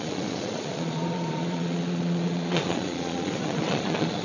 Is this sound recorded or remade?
remade